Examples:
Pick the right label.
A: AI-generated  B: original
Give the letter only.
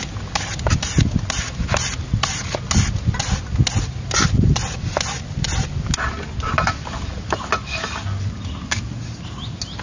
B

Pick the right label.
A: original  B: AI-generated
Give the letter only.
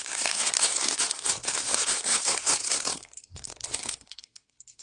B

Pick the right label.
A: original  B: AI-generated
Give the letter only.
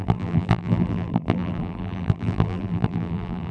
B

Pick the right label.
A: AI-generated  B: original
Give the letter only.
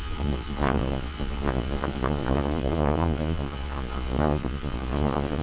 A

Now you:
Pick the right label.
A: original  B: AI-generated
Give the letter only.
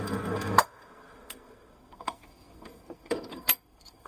B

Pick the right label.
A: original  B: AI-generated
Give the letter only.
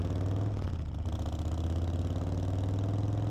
A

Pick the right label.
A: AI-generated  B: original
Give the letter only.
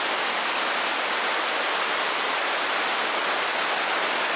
B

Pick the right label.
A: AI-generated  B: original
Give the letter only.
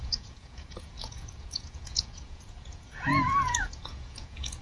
A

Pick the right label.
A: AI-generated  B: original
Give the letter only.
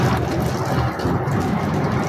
B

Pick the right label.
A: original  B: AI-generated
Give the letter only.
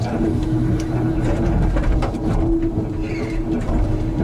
B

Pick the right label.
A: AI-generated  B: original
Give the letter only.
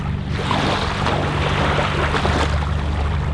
B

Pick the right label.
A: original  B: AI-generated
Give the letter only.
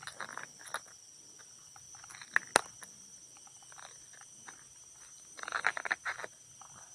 A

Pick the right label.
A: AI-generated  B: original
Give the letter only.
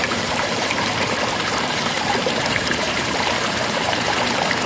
A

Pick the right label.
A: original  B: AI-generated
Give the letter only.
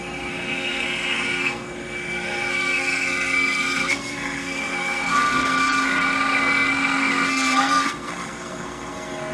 B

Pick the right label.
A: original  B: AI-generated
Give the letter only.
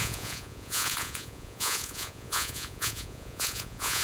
B